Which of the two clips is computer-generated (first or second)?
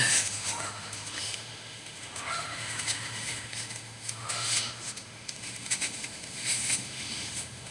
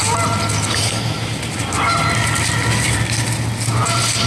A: first